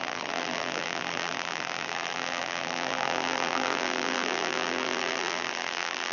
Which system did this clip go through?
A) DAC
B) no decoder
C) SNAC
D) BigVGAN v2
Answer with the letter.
D